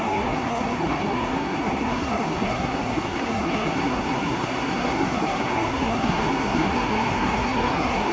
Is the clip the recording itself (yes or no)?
no